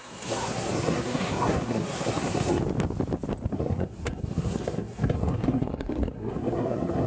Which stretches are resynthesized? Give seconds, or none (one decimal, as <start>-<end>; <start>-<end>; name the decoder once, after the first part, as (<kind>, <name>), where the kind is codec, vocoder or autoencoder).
0.0-2.6 (codec, SNAC); 3.5-7.1